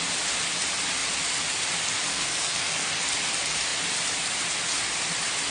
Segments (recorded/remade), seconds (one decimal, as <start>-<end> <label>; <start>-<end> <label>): 0.0-2.1 recorded; 2.1-2.9 remade; 2.9-5.5 recorded

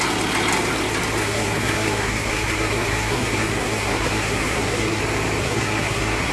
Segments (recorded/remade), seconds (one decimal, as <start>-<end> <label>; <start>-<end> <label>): 0.0-1.2 recorded; 1.2-5.0 remade; 5.0-5.4 recorded; 5.4-6.3 remade

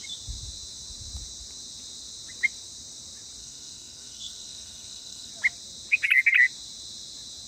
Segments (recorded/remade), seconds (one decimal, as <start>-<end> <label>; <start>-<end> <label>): 0.0-3.4 recorded; 3.4-5.3 remade; 5.3-7.5 recorded

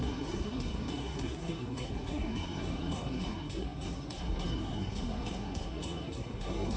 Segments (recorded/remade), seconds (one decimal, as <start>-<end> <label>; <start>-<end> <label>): 0.0-6.8 remade

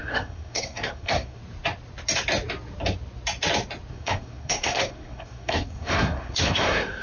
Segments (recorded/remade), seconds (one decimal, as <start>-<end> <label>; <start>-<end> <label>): 0.0-1.4 remade; 1.4-3.9 recorded; 3.9-7.0 remade

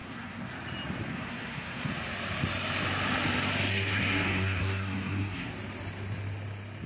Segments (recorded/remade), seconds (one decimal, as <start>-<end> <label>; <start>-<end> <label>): 0.0-0.5 remade; 0.5-1.1 recorded; 1.1-1.9 remade; 1.9-3.7 recorded; 3.7-5.5 remade; 5.5-6.9 recorded

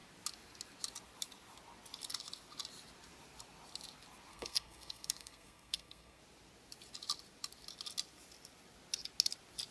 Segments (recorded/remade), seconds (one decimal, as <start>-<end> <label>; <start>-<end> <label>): 0.0-4.3 recorded; 4.3-6.2 remade; 6.2-9.7 recorded